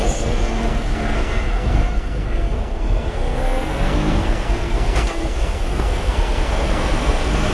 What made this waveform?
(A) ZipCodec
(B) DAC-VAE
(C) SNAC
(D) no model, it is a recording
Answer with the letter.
C